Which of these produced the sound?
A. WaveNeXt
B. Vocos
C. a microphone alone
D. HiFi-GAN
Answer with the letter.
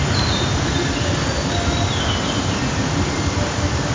C